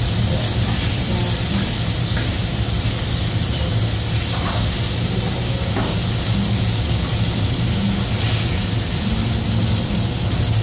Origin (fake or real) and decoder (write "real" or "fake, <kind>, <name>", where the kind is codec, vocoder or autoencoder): real